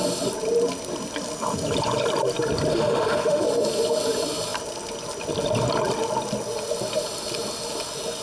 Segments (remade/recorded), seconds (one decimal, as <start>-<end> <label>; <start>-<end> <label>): 0.0-2.7 recorded; 2.7-3.4 remade; 3.4-8.2 recorded